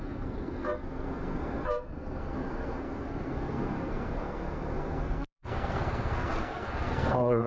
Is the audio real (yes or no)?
no